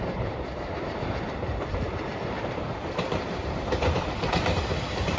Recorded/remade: remade